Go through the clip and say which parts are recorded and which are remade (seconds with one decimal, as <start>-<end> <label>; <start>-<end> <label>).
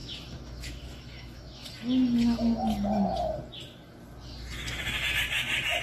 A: 0.0-1.7 remade; 1.7-5.8 recorded